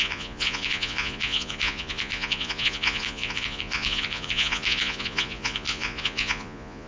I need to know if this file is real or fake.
fake